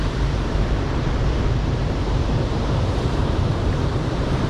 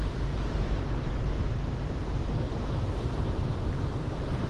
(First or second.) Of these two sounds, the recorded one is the second